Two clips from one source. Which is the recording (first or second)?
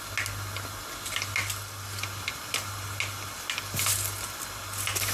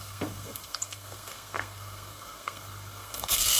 first